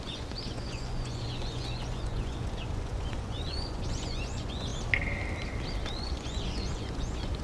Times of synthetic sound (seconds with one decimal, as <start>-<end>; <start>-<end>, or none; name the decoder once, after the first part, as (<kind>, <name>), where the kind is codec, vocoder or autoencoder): 0.0-4.7 (vocoder, Vocos); 5.9-7.4